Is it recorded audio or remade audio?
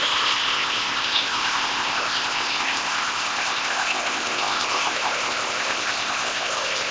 remade